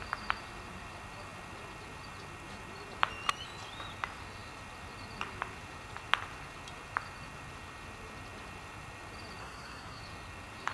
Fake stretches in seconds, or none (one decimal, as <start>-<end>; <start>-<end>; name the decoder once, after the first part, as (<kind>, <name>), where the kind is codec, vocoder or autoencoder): 9.4-10.0 (codec, SNAC)

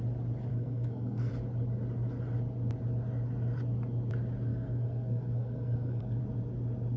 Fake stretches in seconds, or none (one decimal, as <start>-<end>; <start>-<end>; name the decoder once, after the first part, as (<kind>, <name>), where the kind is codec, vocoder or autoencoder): 0.5-1.3 (codec, SNAC); 4.5-6.2

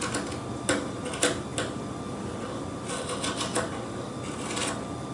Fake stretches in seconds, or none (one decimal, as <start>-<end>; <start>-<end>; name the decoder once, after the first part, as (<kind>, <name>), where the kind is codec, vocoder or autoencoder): none

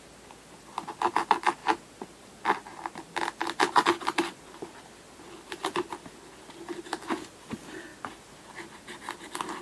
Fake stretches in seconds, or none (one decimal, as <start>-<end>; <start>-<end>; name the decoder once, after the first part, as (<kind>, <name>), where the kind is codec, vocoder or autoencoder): none

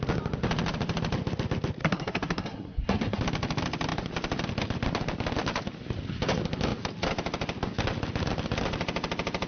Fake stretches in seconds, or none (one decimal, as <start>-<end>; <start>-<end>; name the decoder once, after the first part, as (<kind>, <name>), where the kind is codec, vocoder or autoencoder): 1.8-3.2 (codec, SNAC)